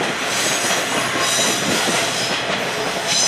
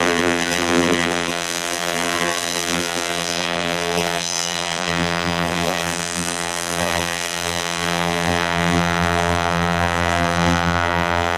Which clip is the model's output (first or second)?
second